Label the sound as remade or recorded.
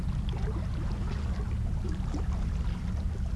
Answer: recorded